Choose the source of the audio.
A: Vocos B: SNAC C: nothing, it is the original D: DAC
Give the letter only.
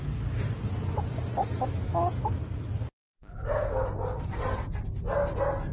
C